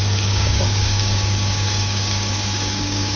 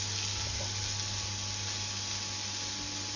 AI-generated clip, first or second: first